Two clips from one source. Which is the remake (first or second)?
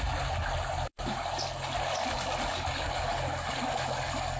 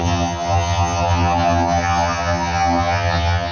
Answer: second